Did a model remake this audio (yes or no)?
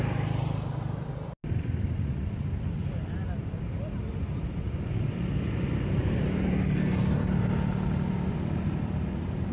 no